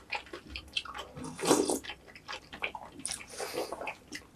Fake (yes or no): no